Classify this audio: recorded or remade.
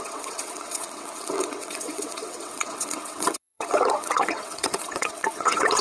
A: remade